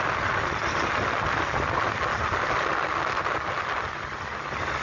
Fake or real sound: real